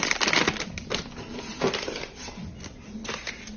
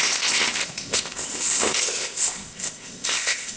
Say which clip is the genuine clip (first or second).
first